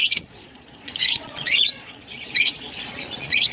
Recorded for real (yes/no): no